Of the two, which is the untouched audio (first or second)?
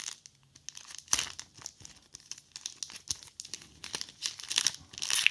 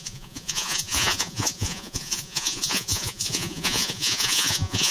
first